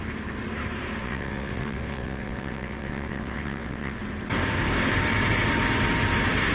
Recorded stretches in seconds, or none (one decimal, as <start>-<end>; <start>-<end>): 0.0-1.0; 4.0-6.5